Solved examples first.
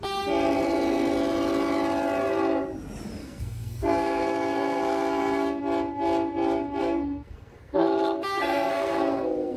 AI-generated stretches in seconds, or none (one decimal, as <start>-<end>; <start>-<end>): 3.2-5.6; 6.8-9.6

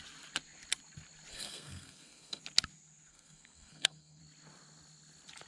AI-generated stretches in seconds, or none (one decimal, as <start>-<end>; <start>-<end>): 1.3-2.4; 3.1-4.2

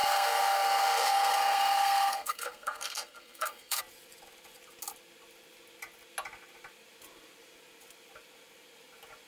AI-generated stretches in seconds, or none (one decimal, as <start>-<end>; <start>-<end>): 0.0-3.8

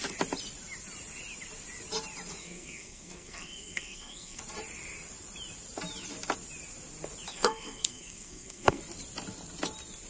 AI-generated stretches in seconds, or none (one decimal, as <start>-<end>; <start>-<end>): 2.4-4.4; 7.3-8.8